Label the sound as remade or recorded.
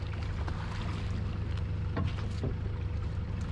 recorded